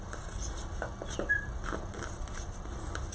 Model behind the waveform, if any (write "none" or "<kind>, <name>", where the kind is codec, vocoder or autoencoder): none